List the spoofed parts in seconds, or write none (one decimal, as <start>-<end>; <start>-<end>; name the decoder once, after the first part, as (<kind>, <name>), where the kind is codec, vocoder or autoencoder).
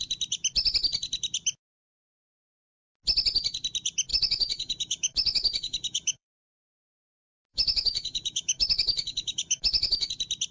4.1-6.4 (autoencoder, DAC-VAE); 7.5-10.1